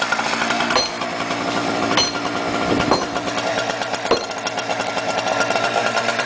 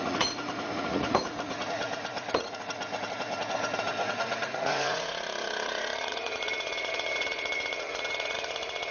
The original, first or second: first